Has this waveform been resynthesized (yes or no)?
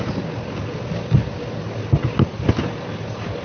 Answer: no